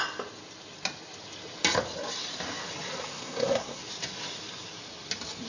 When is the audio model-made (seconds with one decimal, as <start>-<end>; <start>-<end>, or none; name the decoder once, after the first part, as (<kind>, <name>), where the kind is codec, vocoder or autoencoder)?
3.1-3.8 (codec, SNAC)